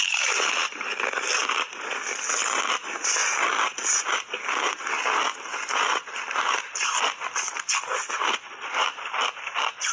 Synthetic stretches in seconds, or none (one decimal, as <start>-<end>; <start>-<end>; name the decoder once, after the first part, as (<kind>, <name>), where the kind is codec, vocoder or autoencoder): 0.0-1.4 (vocoder, BigVGAN v2); 2.2-3.2; 5.7-9.9